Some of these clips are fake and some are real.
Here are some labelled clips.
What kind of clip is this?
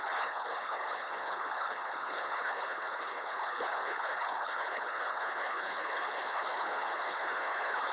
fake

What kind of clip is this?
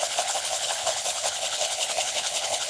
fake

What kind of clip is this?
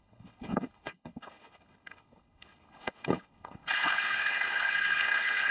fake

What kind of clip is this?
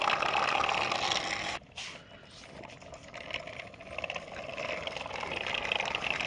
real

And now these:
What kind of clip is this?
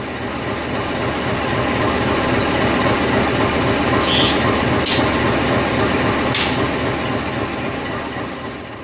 real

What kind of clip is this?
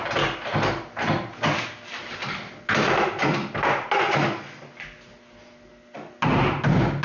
real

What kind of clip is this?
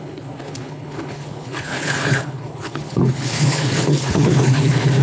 fake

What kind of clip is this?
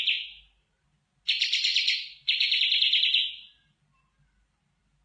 real